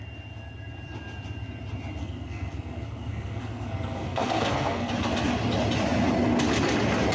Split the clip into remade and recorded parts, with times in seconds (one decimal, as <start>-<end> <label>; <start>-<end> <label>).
0.0-2.0 recorded; 2.0-4.9 remade; 4.9-7.1 recorded